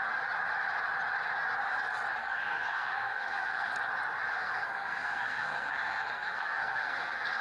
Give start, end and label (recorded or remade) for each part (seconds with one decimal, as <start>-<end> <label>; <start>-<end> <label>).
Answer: 0.0-2.2 recorded; 2.2-3.7 remade; 3.7-4.3 recorded; 4.3-7.4 remade